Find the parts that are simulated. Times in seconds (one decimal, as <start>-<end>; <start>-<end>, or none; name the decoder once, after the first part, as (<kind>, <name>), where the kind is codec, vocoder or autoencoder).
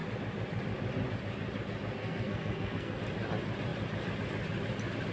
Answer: 2.0-3.0 (codec, SNAC)